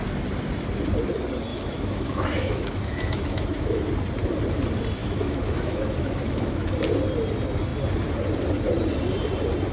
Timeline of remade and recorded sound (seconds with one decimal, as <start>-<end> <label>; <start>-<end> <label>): 0.0-1.5 recorded; 1.5-3.9 remade; 3.9-5.0 recorded; 5.0-6.7 remade; 6.7-9.7 recorded